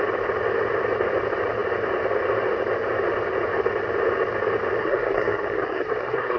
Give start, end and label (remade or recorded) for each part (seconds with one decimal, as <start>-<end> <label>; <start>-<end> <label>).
0.0-4.8 recorded; 4.8-6.4 remade